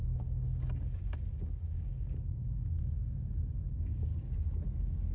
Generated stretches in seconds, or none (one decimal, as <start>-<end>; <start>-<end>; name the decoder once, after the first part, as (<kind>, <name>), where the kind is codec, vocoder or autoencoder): 0.0-4.1 (codec, DAC)

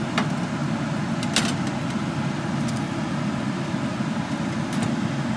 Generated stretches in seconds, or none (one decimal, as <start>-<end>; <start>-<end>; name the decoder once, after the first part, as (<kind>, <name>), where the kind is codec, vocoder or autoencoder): none